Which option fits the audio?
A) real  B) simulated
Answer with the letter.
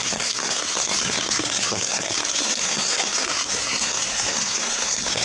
B